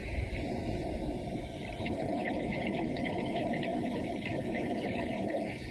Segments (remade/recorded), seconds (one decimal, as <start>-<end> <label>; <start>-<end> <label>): 0.0-1.8 recorded; 1.8-5.7 remade